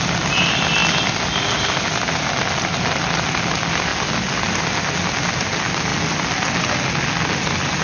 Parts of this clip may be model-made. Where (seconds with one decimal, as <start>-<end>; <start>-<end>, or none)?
none